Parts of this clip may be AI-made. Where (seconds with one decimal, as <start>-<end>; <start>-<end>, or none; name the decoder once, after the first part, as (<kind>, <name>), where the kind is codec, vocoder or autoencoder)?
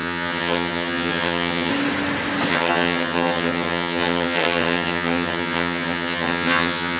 0.0-1.7 (vocoder, HiFi-GAN); 2.5-7.0